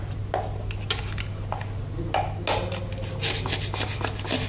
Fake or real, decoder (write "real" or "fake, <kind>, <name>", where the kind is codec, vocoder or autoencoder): real